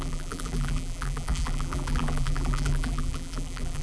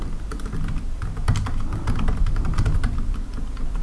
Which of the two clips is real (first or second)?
second